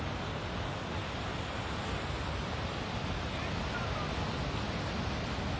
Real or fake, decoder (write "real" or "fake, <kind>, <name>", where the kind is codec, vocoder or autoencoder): real